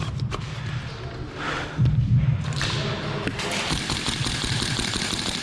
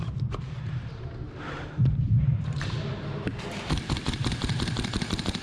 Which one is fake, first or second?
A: second